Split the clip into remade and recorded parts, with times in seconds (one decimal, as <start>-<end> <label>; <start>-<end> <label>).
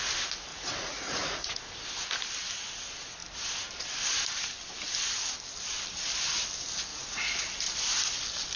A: 0.0-0.5 recorded; 0.5-1.6 remade; 1.6-6.9 recorded; 6.9-7.4 remade; 7.4-8.6 recorded